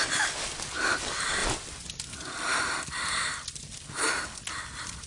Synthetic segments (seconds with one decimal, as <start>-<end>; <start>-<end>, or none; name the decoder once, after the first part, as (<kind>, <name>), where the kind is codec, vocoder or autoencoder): none